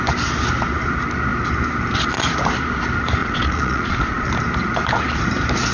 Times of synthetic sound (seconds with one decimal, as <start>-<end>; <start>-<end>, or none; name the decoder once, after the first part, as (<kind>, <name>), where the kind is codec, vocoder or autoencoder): 3.2-4.3 (vocoder, Vocos)